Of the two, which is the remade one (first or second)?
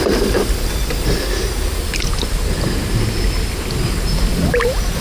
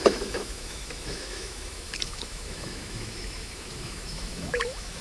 second